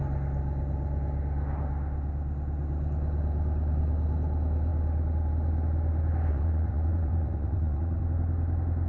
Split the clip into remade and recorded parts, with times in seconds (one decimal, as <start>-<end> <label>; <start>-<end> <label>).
0.0-6.3 recorded; 6.3-8.0 remade; 8.0-8.9 recorded